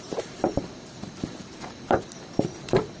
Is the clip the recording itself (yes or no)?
no